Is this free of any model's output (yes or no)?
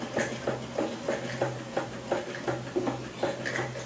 yes